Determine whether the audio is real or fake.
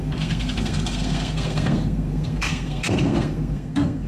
fake